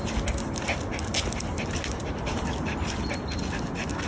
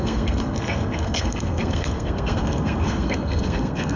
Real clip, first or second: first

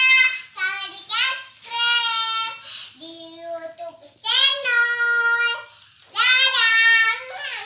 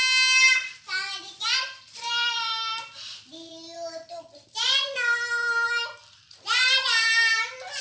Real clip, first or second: first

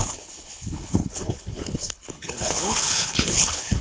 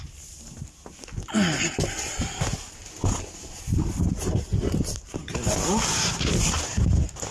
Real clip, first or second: second